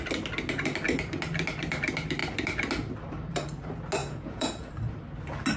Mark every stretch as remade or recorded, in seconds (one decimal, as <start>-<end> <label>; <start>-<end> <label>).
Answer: 0.0-4.0 recorded; 4.0-4.7 remade; 4.7-5.6 recorded